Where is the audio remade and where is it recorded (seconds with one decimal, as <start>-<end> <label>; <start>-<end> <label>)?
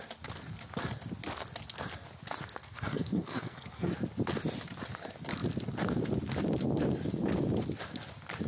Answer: 0.0-2.6 recorded; 2.6-3.9 remade; 3.9-8.5 recorded